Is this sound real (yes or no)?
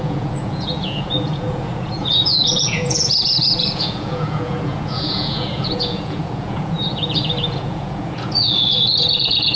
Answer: no